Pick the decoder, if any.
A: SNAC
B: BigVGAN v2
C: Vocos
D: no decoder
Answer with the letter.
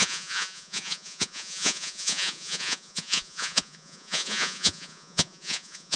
C